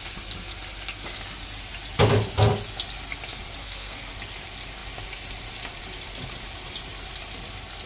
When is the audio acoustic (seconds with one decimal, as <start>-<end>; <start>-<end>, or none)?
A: 0.0-3.6; 4.1-7.9